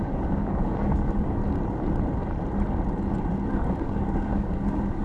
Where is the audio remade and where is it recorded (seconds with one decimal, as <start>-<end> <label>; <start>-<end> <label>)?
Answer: 0.0-1.4 remade; 1.4-3.5 recorded; 3.5-5.0 remade